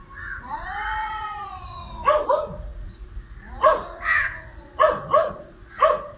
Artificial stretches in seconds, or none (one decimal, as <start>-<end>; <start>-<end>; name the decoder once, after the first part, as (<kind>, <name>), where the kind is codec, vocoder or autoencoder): 0.0-6.2 (vocoder, Vocos)